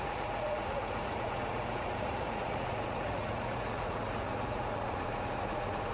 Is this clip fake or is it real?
fake